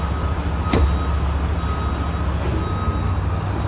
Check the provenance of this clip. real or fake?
real